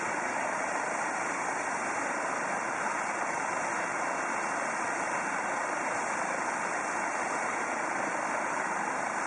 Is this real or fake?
real